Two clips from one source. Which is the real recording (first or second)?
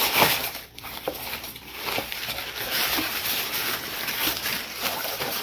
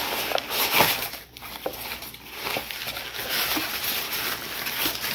second